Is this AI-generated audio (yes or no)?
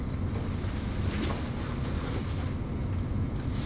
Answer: no